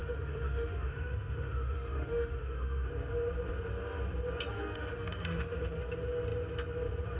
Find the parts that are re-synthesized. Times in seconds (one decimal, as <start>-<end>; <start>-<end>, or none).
0.0-2.9; 4.5-5.8